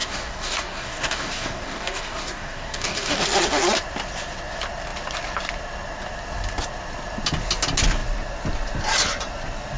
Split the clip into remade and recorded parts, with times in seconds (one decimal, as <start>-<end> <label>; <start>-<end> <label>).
0.0-3.1 remade; 3.1-9.8 recorded